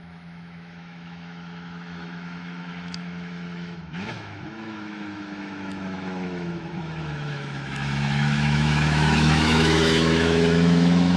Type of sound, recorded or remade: remade